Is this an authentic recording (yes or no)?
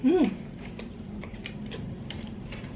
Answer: no